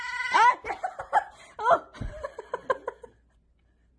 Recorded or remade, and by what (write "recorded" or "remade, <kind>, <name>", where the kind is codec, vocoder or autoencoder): recorded